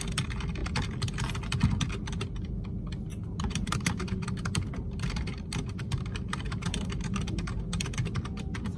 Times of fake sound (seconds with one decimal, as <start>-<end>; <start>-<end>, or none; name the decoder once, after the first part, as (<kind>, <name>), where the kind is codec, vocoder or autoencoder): 3.1-7.6 (vocoder, BigVGAN v2)